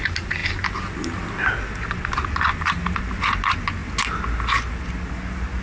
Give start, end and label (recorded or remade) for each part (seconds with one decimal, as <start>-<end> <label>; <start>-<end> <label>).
0.0-5.6 recorded